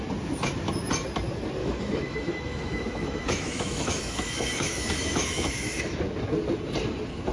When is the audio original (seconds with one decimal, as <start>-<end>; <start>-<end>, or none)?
0.0-1.6; 6.0-7.3